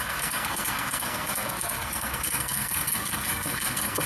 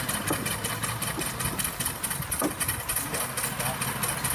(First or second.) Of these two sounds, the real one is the second